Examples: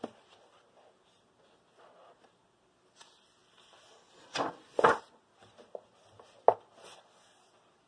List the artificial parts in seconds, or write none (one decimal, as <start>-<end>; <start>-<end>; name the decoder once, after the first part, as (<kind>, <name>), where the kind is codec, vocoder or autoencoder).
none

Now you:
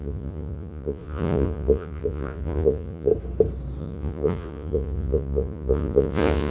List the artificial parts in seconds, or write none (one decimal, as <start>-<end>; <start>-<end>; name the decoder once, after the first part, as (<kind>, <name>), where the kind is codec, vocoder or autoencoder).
0.0-3.1 (vocoder, Vocos); 3.8-6.5

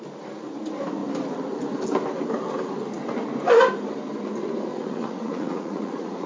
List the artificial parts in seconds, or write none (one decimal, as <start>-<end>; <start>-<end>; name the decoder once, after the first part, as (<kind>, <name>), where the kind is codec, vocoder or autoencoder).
4.7-6.3 (vocoder, Vocos)

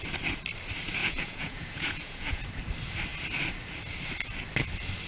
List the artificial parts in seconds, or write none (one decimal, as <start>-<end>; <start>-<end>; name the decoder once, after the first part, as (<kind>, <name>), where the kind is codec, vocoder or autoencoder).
1.0-2.4 (vocoder, Vocos)

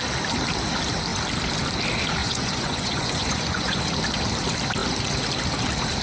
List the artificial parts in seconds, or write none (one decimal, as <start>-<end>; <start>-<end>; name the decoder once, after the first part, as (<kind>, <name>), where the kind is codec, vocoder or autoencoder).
2.2-3.8 (vocoder, Vocos)

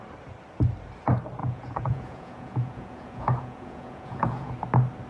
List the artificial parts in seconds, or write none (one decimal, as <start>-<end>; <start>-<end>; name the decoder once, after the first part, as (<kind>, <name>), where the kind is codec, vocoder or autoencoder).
1.4-4.5 (vocoder, Vocos)

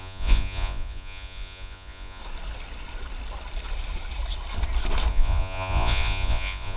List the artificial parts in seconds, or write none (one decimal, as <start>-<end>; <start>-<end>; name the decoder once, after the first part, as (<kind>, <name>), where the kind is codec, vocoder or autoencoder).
0.0-2.2 (vocoder, Vocos); 5.1-6.8

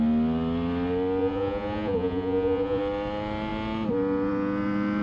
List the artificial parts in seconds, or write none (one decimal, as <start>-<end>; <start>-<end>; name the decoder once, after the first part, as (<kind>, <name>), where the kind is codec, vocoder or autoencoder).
1.2-2.8 (vocoder, Vocos)